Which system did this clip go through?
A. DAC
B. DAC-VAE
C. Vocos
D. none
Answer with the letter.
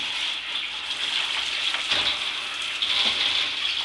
D